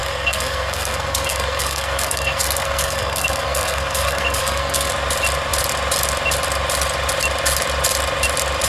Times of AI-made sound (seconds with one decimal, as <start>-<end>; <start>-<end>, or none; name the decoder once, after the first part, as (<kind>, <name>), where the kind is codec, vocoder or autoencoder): 0.0-4.9 (codec, SNAC)